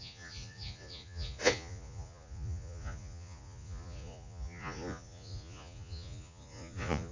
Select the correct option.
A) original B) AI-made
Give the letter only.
B